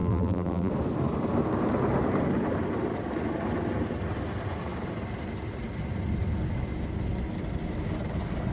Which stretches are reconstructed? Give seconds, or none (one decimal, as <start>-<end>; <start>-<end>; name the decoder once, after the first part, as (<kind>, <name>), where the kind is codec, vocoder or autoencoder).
0.0-0.7 (vocoder, BigVGAN v2)